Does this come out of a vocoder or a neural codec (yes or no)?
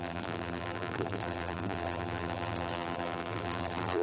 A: yes